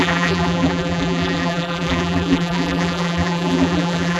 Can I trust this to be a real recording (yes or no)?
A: no